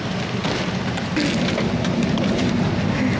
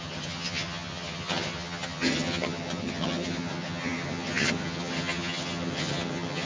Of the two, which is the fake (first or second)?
second